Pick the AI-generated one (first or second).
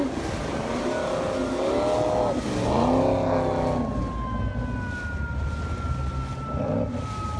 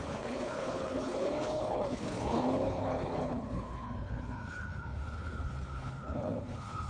second